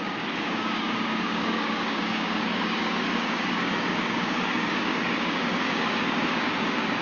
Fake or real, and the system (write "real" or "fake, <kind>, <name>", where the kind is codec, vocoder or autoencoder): fake, codec, DAC